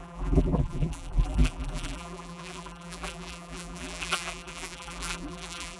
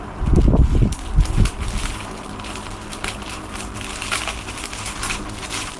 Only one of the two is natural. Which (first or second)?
second